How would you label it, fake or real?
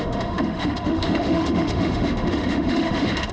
fake